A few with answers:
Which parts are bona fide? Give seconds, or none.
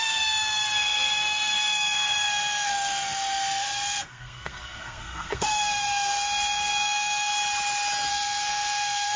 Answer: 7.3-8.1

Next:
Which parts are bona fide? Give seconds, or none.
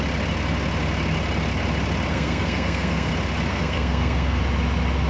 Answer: 0.0-2.1; 3.1-3.5; 4.4-5.1